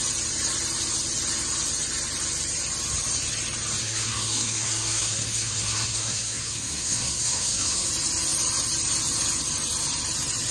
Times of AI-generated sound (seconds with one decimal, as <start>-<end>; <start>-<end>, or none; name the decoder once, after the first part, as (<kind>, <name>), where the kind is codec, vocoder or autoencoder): 3.8-7.9 (codec, SNAC)